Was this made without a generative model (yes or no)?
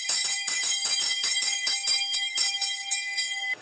no